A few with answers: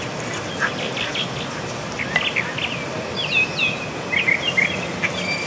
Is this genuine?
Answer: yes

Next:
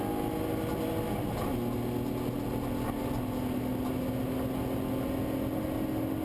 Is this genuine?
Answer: yes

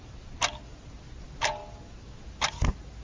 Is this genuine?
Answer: yes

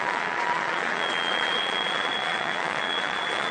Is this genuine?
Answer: no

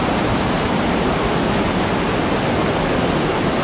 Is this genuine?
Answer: yes